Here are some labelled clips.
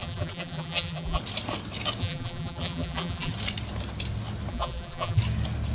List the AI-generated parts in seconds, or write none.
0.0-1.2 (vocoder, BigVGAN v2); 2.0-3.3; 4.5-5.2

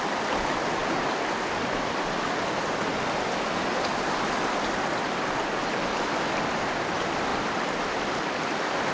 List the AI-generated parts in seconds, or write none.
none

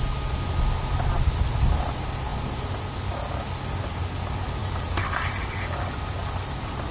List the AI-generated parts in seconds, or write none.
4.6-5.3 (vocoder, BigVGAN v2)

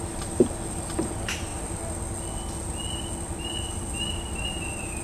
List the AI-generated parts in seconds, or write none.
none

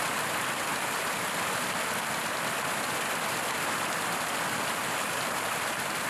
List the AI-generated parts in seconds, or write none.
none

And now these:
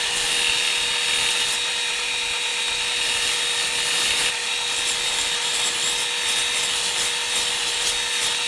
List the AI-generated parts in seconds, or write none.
2.5-5.8 (vocoder, BigVGAN v2); 6.4-7.7

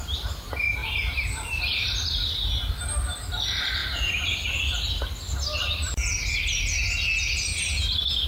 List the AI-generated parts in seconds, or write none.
0.8-2.7 (vocoder, BigVGAN v2)

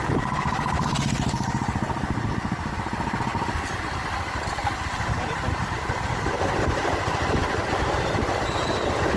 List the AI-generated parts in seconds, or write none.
3.3-8.3 (vocoder, BigVGAN v2)